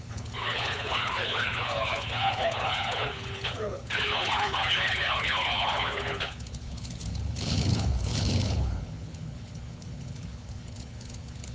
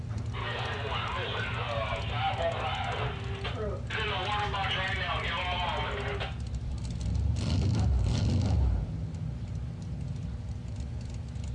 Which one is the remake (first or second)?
first